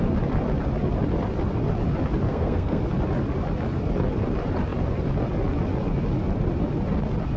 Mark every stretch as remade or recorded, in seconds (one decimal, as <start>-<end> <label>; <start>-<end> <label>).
0.0-2.3 recorded; 2.3-2.8 remade; 2.8-7.4 recorded